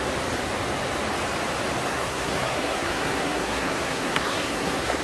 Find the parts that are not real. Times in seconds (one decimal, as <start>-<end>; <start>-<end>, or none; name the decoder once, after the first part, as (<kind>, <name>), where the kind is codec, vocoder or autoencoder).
1.9-5.0 (codec, SNAC)